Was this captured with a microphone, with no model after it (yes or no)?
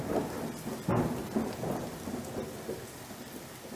yes